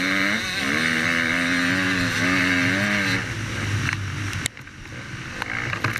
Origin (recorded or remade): recorded